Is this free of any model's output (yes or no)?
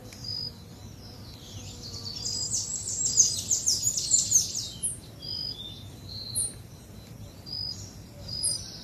yes